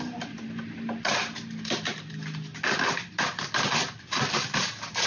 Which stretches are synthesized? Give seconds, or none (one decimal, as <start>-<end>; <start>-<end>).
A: none